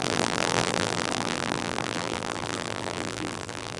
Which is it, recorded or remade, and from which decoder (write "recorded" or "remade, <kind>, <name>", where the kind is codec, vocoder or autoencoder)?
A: remade, vocoder, BigVGAN v2